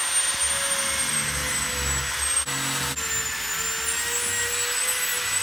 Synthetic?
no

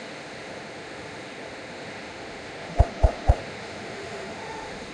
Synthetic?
yes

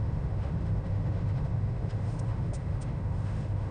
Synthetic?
yes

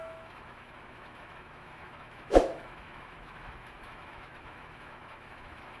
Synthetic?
yes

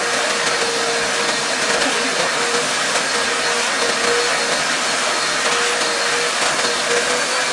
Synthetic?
no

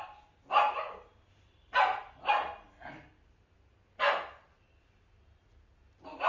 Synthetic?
no